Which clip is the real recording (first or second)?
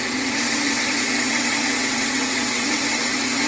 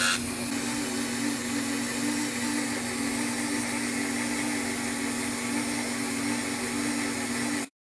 second